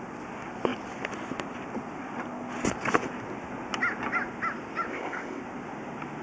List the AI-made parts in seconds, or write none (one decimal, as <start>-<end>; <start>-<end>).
4.9-5.4